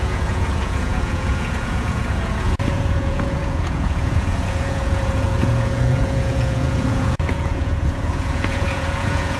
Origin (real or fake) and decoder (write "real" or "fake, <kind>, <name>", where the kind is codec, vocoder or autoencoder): fake, vocoder, Vocos